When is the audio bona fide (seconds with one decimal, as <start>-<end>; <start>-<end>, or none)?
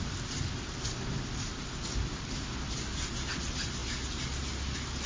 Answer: 0.0-5.1